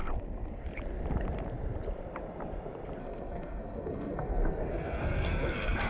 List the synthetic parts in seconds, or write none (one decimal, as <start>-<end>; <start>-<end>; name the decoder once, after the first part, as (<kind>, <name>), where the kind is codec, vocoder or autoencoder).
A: 3.0-5.9 (codec, SNAC)